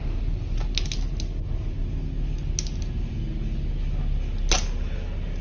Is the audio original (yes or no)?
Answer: yes